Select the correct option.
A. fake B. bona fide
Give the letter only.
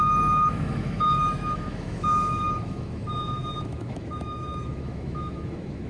A